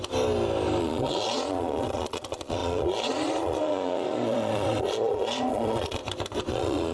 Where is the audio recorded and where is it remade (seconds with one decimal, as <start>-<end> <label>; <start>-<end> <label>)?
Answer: 0.0-0.8 recorded; 0.8-6.0 remade; 6.0-6.5 recorded; 6.5-6.9 remade